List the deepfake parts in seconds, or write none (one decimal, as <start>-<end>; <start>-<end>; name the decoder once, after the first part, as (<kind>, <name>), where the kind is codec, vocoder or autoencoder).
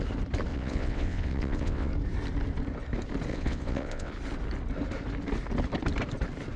0.5-1.9 (vocoder, WaveNeXt); 3.3-4.1